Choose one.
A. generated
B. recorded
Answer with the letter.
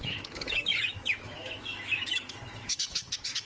A